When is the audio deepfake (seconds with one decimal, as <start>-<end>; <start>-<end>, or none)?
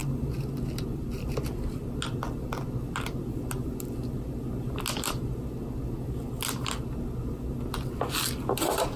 none